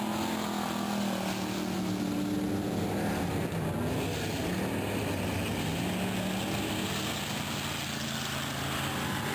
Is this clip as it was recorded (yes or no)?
yes